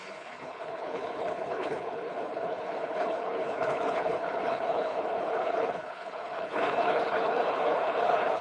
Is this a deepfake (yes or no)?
yes